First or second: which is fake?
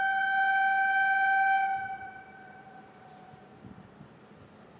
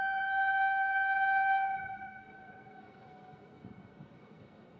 second